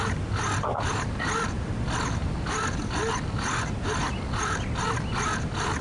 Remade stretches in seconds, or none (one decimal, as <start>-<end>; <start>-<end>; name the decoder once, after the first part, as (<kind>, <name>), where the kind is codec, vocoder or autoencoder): none